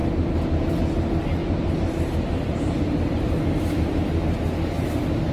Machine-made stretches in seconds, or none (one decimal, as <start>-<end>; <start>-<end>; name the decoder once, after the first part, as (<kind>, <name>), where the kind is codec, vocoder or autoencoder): 0.0-0.7 (vocoder, BigVGAN v2); 1.4-4.2